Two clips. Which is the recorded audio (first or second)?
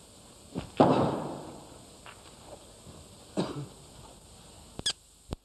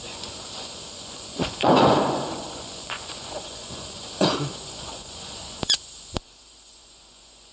first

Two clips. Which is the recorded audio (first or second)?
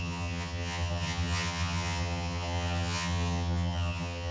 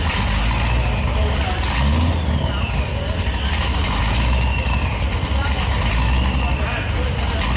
second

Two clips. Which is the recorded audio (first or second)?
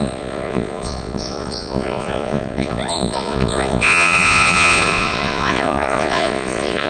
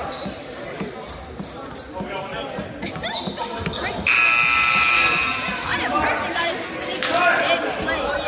second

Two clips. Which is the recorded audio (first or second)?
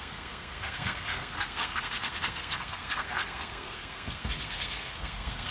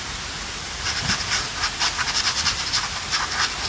second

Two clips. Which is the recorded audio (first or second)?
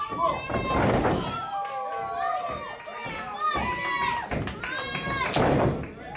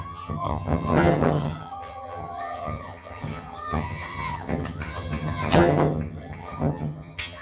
first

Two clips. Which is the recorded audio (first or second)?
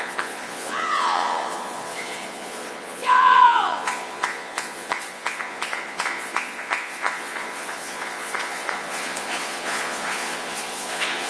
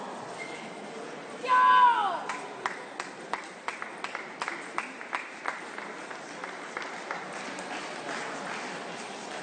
second